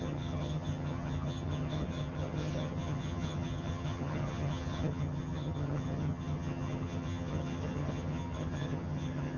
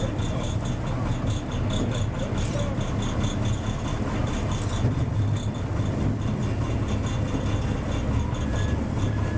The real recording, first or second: second